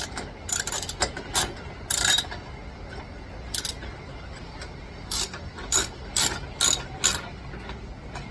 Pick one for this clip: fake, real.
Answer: real